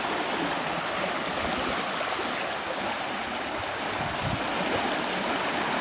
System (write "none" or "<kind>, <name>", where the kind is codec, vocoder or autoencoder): none